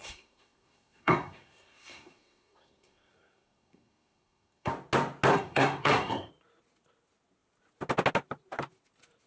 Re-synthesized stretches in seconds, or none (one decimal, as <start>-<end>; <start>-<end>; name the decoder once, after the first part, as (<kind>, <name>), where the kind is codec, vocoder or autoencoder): 0.0-4.7 (codec, SNAC); 5.3-6.3

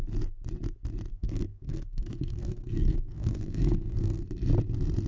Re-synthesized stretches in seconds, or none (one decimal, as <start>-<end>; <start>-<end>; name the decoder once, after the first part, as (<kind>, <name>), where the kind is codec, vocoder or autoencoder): 1.1-4.2 (codec, SNAC)

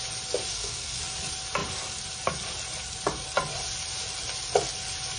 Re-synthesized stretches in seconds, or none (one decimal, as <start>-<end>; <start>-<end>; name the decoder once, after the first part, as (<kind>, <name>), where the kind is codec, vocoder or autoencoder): 0.5-1.0 (codec, SNAC)

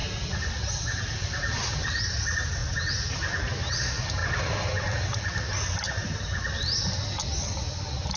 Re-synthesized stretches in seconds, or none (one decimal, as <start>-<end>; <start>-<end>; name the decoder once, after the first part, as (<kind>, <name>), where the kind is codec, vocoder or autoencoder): none

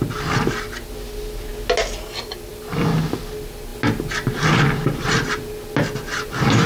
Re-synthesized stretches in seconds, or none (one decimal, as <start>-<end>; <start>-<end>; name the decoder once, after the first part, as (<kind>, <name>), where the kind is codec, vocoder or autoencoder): none

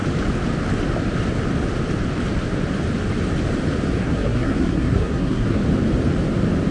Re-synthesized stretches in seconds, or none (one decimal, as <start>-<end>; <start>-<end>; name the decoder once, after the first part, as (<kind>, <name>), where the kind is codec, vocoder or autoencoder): 4.0-5.6 (codec, SNAC)